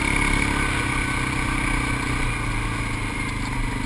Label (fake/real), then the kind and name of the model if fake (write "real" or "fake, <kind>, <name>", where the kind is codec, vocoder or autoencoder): real